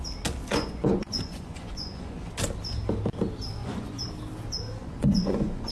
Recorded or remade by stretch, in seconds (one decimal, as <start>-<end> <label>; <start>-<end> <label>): 0.0-0.5 recorded; 0.5-2.3 remade; 2.3-3.6 recorded; 3.6-4.1 remade; 4.1-4.8 recorded; 4.8-5.7 remade

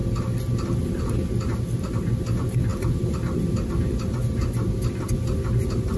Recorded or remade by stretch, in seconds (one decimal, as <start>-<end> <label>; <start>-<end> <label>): 0.0-6.0 recorded